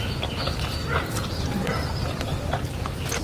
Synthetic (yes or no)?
no